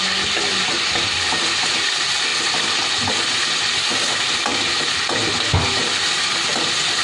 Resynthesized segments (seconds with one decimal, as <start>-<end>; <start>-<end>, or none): none